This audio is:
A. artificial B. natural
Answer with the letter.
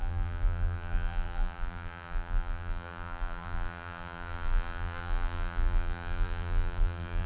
A